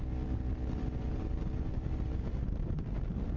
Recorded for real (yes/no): yes